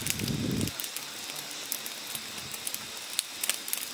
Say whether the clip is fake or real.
real